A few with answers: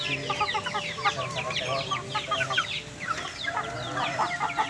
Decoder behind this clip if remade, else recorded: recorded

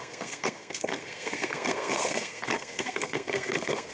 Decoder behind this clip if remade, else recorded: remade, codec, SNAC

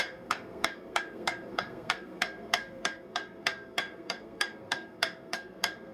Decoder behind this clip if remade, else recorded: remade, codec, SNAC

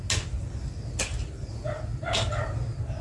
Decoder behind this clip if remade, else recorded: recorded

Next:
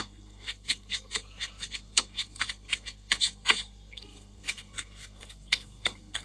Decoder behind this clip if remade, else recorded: remade, codec, SNAC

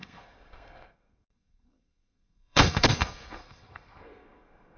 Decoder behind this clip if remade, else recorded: remade, codec, SNAC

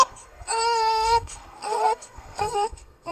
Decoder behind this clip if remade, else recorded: remade, codec, SNAC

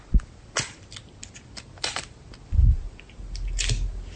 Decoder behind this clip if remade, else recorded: recorded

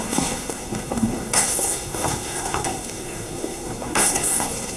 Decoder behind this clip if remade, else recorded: remade, codec, SNAC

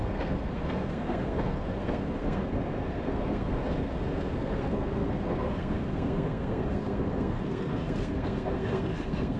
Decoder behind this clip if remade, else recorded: remade, codec, SNAC